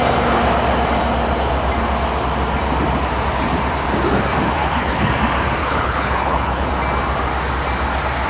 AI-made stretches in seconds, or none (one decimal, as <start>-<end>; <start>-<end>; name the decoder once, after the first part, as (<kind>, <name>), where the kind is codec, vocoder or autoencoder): 4.6-5.1 (codec, HILCodec); 5.6-6.7